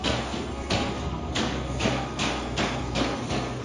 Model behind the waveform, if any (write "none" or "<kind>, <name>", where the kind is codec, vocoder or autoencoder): codec, SNAC